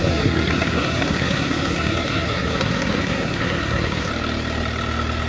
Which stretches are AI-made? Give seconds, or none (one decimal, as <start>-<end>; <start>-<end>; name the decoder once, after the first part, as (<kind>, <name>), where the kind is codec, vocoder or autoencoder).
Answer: 0.0-4.1 (codec, SNAC)